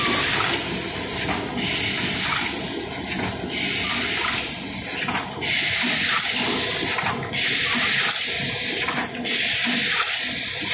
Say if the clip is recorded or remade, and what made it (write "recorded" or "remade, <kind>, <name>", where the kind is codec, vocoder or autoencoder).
recorded